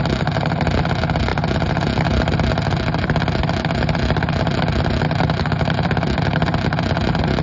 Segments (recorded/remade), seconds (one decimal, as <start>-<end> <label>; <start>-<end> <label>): 0.0-7.4 recorded